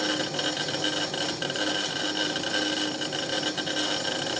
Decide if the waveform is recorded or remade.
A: recorded